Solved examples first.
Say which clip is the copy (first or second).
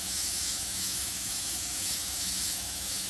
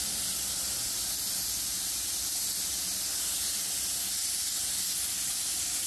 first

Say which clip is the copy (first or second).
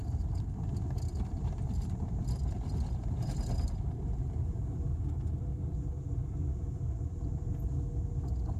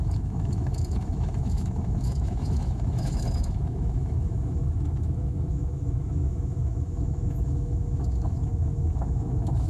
second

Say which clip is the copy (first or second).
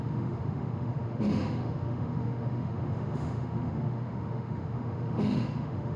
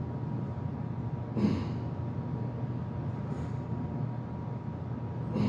first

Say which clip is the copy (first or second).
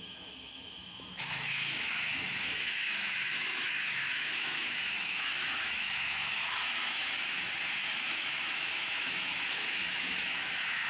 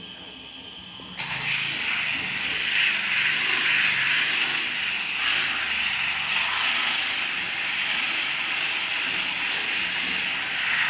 first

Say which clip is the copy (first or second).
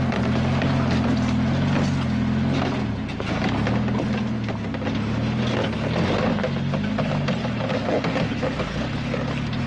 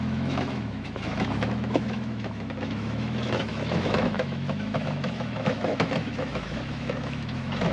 second